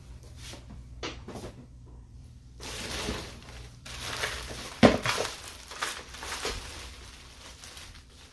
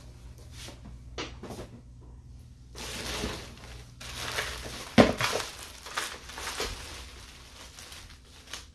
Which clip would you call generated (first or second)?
first